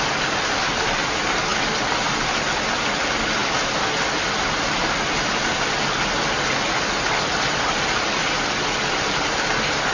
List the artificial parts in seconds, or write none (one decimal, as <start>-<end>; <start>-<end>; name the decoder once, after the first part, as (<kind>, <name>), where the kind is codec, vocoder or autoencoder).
none